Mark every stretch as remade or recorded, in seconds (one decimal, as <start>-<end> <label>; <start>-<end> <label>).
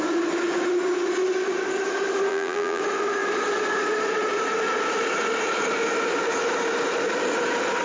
0.0-2.3 recorded; 2.3-2.8 remade; 2.8-7.8 recorded